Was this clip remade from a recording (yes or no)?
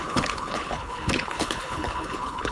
yes